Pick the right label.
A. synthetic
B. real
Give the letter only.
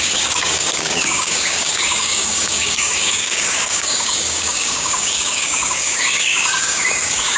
A